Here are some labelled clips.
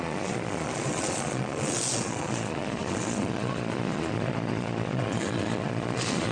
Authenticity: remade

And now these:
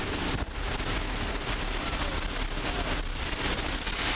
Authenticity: recorded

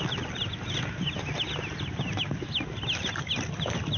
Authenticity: recorded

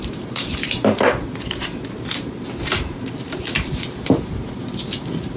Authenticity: remade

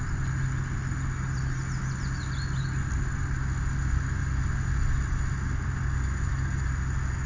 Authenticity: recorded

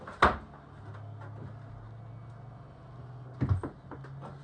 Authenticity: recorded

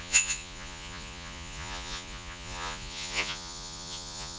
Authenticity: remade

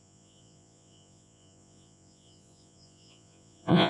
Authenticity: remade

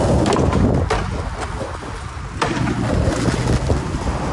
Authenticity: recorded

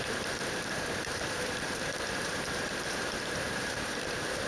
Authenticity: remade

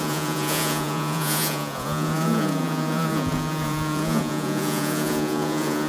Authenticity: remade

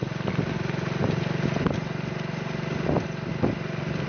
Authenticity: recorded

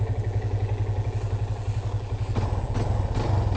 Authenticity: recorded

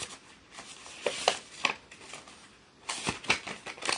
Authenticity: recorded